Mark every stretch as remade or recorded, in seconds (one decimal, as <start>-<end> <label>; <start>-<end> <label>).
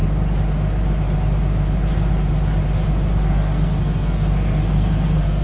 0.0-3.2 recorded; 3.2-5.4 remade